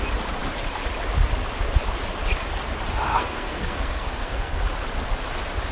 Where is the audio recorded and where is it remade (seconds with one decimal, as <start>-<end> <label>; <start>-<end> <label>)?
0.0-3.1 recorded; 3.1-4.6 remade; 4.6-5.7 recorded